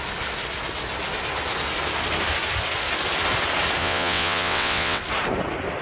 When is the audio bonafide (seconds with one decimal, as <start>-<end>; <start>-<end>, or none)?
0.0-3.8; 5.0-5.8